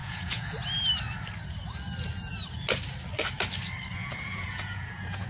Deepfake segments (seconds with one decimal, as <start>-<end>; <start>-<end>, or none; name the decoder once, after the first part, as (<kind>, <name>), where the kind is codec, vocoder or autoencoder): 0.0-0.5 (vocoder, Vocos); 4.0-5.3